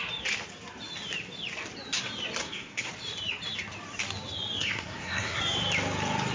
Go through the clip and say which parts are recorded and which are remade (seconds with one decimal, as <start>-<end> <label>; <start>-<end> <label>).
0.0-2.4 recorded; 2.4-2.9 remade; 2.9-4.6 recorded; 4.6-5.4 remade; 5.4-6.3 recorded